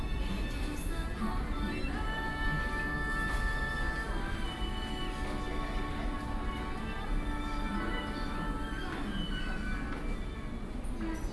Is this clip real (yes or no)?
yes